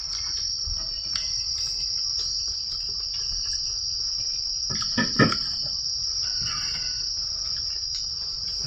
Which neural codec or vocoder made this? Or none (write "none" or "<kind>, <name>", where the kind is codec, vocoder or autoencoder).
none